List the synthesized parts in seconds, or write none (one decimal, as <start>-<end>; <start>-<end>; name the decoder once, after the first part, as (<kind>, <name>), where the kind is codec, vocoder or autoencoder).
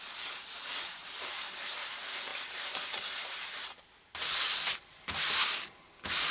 none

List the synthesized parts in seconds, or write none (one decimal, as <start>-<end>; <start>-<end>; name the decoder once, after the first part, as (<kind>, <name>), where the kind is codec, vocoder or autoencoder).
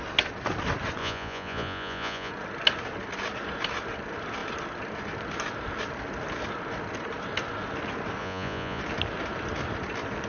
1.0-2.3 (vocoder, Vocos); 8.2-8.8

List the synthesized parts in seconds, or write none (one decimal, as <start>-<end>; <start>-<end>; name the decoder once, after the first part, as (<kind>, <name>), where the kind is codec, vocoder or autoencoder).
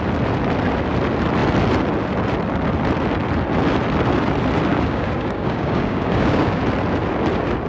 4.7-6.6 (codec, DAC)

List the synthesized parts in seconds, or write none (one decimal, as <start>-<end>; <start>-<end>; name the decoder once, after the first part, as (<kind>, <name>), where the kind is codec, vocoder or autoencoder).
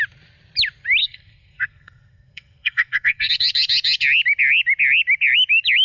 1.0-3.3 (codec, SNAC)